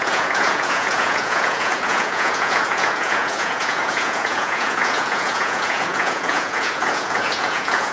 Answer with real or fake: fake